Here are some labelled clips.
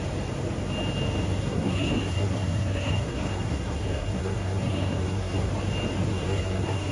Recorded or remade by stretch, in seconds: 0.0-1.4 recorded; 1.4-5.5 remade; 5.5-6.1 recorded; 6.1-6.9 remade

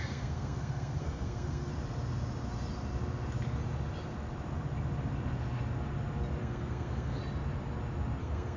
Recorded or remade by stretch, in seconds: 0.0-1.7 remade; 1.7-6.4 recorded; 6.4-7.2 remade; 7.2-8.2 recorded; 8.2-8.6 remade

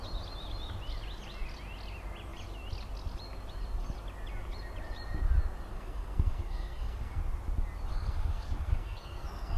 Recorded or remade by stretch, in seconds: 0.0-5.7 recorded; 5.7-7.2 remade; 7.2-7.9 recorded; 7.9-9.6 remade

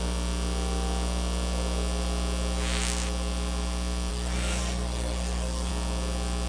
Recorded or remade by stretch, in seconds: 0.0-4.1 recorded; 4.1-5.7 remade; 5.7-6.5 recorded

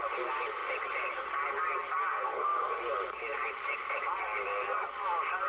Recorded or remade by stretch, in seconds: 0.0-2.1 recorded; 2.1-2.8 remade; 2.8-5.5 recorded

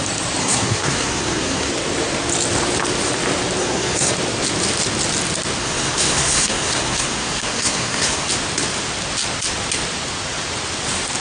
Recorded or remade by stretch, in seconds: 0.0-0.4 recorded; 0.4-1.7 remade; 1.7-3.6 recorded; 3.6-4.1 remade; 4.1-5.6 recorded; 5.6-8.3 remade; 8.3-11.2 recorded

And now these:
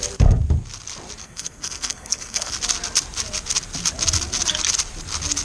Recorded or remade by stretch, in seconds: 0.0-1.2 recorded; 1.2-2.5 remade; 2.5-5.4 recorded